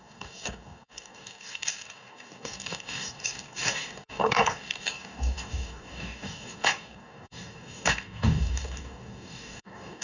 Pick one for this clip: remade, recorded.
remade